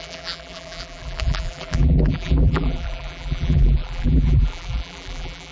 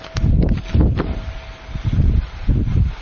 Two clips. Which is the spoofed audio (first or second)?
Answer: first